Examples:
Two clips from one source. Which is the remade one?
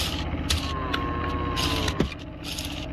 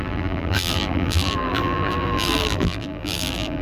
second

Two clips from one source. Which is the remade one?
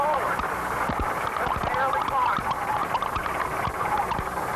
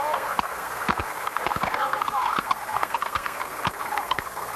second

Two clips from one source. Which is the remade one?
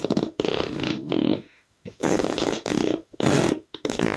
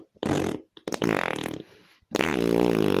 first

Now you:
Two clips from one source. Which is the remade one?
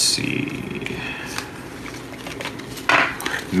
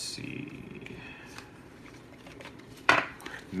second